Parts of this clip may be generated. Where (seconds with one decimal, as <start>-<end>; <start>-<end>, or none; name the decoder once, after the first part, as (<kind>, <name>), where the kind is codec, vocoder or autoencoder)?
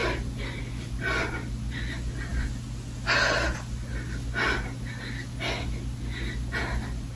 none